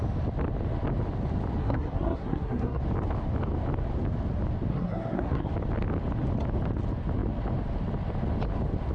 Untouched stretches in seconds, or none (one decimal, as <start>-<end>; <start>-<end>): 0.0-1.6; 2.8-4.7; 5.5-8.9